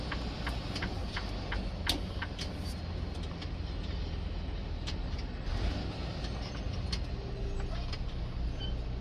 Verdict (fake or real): real